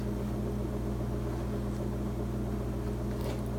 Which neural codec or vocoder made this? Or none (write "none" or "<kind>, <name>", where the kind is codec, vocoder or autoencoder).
none